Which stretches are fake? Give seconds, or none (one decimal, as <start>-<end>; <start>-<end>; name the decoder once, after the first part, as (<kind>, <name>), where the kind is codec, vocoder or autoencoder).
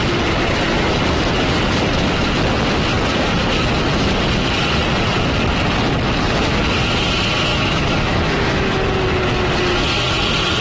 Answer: 7.5-8.8 (autoencoder, DAC-VAE)